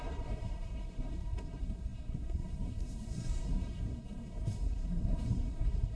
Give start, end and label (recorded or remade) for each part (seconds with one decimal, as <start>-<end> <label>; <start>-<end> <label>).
0.0-6.0 remade